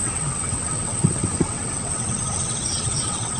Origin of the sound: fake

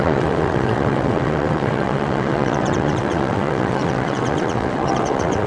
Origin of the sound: fake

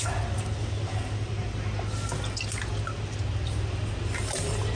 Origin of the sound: real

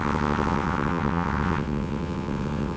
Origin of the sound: fake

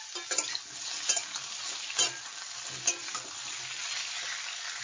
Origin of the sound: real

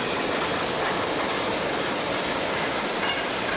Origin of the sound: real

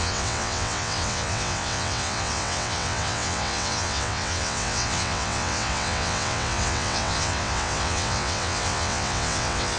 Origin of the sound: fake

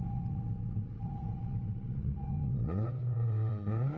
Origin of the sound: fake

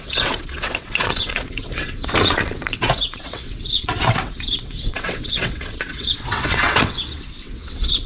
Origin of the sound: fake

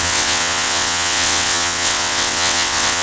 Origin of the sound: fake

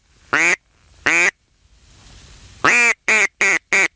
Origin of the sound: real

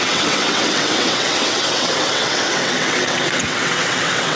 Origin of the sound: fake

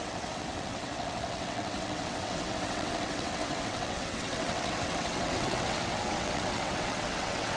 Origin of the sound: fake